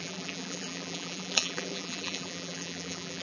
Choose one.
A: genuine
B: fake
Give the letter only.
B